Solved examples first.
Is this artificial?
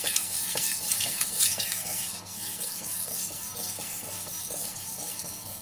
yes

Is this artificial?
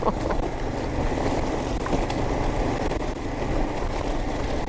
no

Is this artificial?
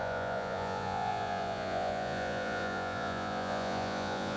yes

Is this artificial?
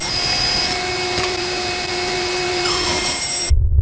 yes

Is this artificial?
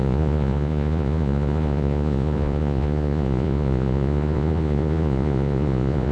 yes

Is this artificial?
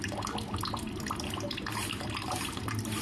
no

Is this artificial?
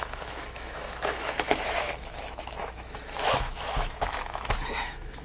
yes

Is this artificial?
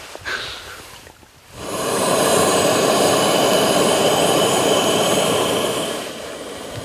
yes